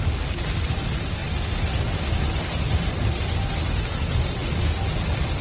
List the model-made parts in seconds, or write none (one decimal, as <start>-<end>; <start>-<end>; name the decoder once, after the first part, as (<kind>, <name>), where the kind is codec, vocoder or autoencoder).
none